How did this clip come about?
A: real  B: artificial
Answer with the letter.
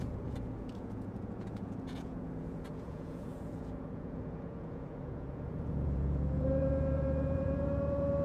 B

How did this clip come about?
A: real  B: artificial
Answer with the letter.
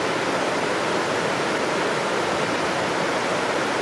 A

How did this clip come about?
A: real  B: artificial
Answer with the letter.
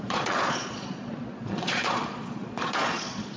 B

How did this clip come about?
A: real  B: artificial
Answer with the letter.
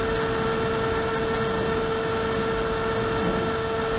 A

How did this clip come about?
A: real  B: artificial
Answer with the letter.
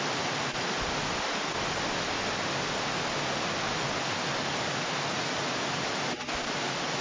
A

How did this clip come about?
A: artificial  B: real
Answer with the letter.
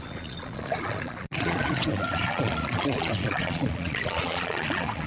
A